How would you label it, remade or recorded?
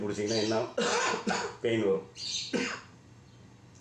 recorded